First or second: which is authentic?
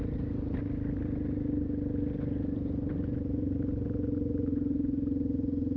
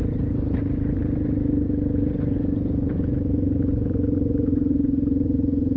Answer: first